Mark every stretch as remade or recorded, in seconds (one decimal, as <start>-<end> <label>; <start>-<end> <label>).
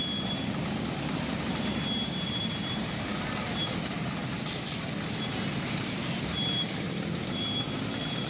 0.0-8.3 recorded